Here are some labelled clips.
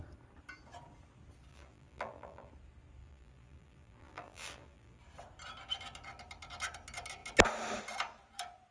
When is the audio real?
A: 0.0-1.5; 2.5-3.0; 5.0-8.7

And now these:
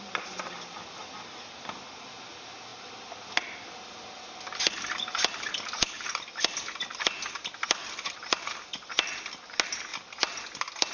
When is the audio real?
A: 0.0-10.9

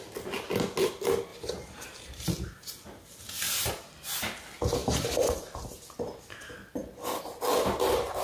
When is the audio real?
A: 0.0-1.3; 2.3-4.8; 5.5-8.2